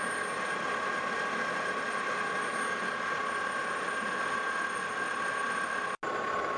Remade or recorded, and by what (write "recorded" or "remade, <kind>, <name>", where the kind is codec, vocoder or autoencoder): recorded